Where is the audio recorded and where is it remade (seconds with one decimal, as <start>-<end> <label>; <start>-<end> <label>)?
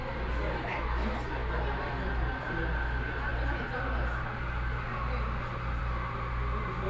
0.0-6.9 recorded